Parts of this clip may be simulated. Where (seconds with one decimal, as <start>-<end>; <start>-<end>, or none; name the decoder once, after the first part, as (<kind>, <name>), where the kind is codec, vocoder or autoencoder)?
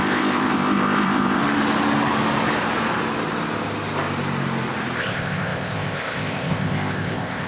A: 0.0-1.4 (codec, ZipCodec); 5.0-7.5